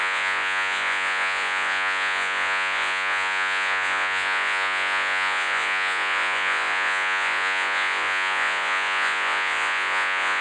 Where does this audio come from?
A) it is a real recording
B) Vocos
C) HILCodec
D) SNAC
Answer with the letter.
B